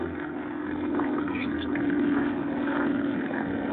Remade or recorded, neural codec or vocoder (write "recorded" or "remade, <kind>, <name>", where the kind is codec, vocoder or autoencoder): remade, codec, SNAC